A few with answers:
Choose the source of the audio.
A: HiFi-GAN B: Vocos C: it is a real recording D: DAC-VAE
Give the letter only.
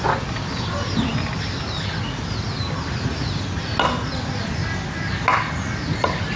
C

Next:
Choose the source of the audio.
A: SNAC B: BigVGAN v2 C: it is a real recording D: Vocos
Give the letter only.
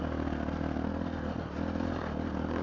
C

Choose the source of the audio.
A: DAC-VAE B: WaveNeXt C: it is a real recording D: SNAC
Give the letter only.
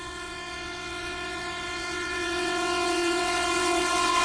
B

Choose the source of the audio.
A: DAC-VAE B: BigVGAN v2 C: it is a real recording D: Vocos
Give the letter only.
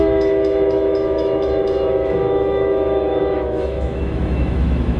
A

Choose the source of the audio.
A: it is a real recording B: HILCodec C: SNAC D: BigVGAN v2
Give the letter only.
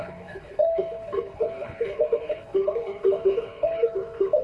B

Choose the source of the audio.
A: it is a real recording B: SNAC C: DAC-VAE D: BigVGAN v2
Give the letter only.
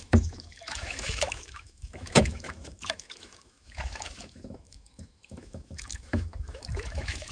C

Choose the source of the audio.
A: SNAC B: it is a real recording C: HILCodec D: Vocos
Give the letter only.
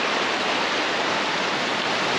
B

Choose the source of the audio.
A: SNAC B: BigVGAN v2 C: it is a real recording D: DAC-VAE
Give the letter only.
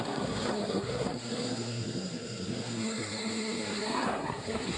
A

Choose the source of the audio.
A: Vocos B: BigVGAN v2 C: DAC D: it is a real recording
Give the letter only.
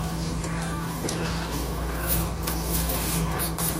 C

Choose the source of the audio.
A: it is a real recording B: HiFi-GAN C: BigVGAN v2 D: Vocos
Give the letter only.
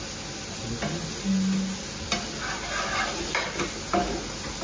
A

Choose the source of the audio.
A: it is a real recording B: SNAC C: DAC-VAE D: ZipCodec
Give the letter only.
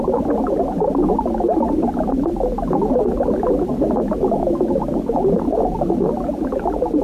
A